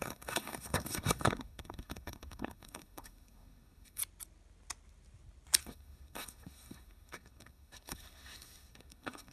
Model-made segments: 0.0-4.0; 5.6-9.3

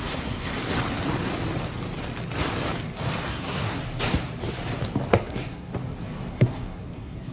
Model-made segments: 0.0-0.5; 3.3-3.8; 5.1-5.7; 6.3-7.3

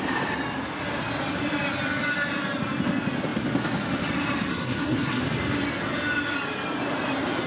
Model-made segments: 4.5-5.2

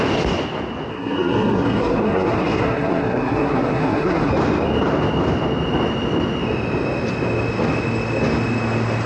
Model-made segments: 0.9-4.3

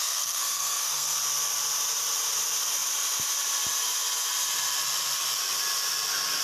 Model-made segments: 0.0-1.2